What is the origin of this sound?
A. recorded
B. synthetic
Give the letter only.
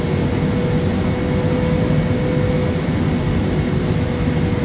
A